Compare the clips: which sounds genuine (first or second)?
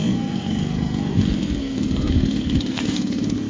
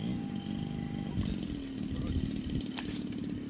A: second